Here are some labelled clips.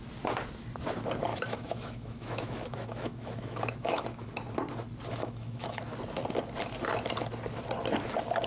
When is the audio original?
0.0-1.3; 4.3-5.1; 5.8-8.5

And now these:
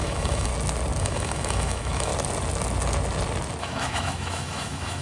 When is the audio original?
0.5-1.0; 2.1-3.6

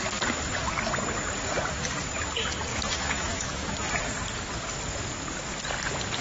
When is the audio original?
0.0-2.7; 3.7-6.2

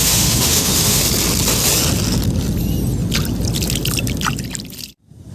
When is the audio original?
1.0-5.3

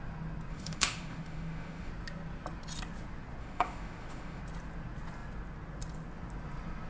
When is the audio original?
0.0-0.5; 1.9-3.4; 4.4-6.9

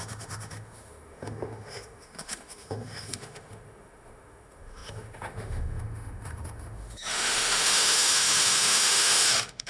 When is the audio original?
none